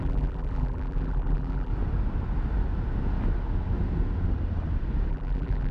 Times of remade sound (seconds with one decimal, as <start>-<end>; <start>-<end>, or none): 0.0-1.7; 5.1-5.7